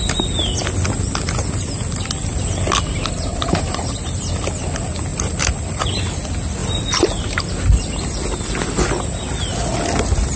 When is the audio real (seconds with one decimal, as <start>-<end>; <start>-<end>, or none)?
0.0-3.3; 4.0-5.1; 6.0-10.4